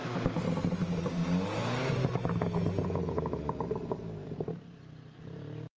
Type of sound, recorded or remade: recorded